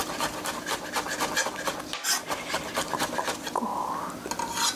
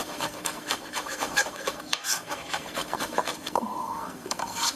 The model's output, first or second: second